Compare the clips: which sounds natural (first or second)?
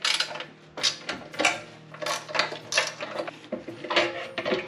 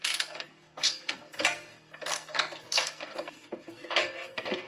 first